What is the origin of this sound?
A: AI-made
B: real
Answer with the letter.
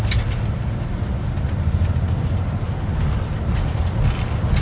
B